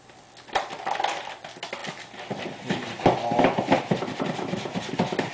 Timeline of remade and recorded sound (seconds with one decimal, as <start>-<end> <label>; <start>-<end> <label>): 0.0-5.3 remade